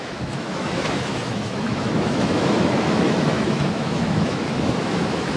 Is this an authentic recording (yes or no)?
no